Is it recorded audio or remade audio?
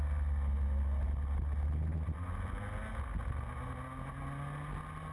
recorded